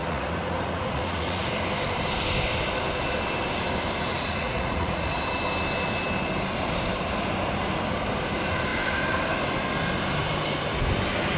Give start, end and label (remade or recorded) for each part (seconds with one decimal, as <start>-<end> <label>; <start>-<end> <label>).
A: 0.0-1.5 remade; 1.5-4.1 recorded; 4.1-5.2 remade; 5.2-11.4 recorded